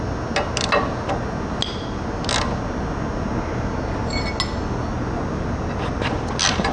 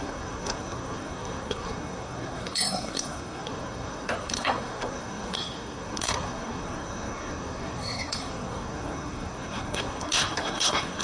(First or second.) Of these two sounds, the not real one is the second